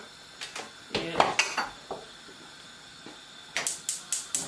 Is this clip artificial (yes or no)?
no